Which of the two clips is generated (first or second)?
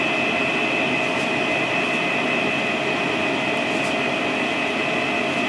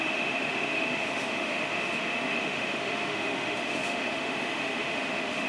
second